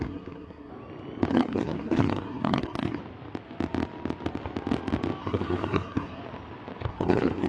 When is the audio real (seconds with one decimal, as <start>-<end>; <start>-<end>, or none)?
0.7-1.3; 3.0-5.2; 6.2-6.9